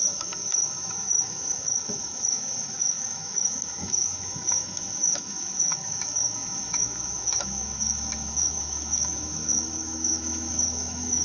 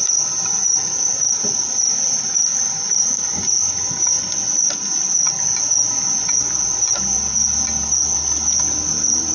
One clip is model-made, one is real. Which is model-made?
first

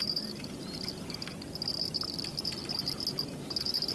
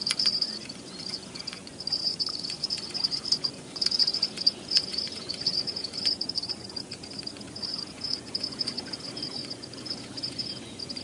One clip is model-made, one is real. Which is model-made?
second